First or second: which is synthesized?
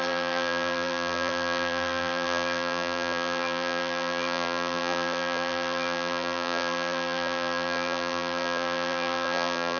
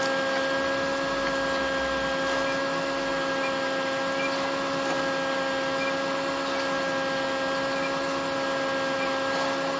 first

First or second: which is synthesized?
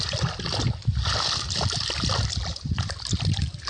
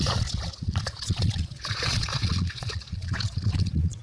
second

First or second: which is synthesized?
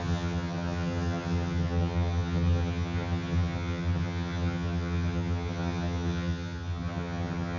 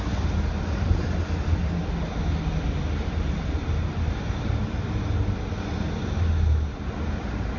first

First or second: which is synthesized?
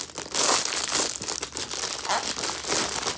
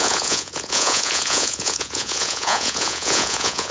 second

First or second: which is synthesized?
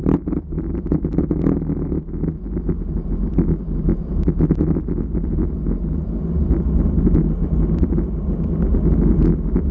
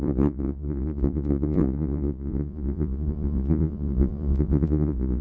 second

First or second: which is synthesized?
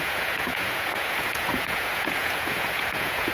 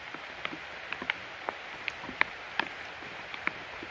first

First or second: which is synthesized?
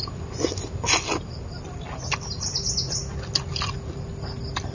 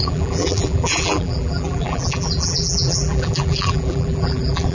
second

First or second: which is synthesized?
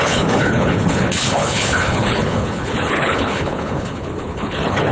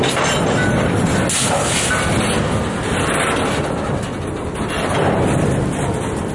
first